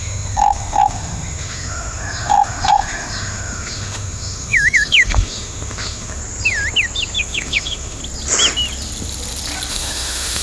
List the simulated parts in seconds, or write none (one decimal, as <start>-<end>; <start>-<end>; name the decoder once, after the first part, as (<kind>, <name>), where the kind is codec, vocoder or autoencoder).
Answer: 0.0-6.2 (autoencoder, DAC-VAE); 7.2-8.0; 9.7-10.4